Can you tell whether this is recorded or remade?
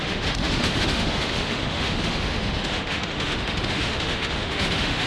remade